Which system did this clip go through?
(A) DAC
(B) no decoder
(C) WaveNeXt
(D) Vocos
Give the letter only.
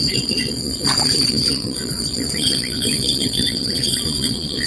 C